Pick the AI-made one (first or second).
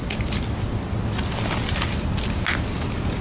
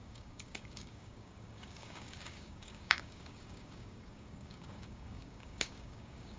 second